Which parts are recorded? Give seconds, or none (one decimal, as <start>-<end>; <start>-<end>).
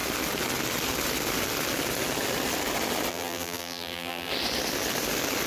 0.0-3.1; 4.3-5.5